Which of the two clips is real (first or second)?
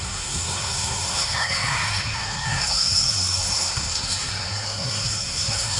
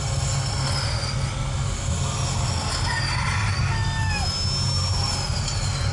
second